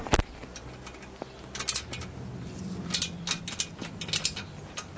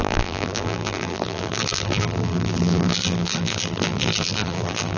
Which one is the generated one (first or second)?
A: second